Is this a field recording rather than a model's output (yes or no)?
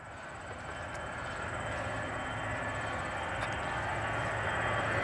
yes